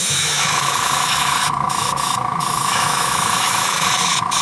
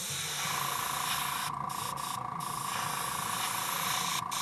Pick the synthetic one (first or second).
first